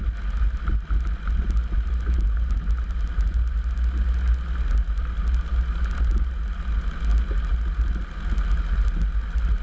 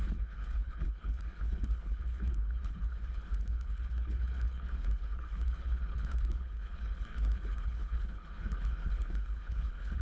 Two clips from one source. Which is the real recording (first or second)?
first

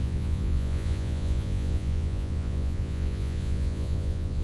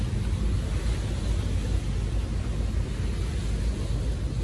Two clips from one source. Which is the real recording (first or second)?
second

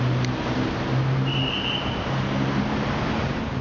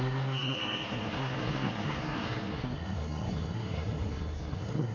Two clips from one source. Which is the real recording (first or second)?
first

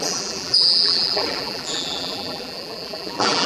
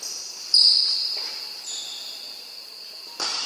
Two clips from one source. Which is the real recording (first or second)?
second